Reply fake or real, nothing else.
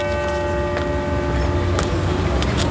real